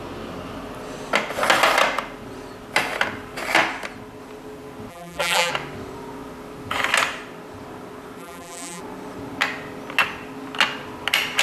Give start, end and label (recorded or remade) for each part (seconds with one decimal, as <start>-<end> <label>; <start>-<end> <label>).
0.0-4.9 recorded; 4.9-5.5 remade; 5.5-8.2 recorded; 8.2-8.8 remade; 8.8-11.4 recorded